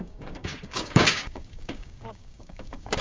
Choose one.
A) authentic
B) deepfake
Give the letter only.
B